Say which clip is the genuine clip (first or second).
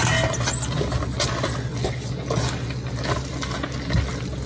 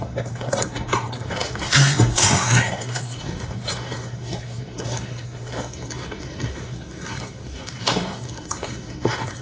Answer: first